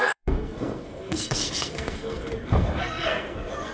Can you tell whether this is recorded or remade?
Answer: remade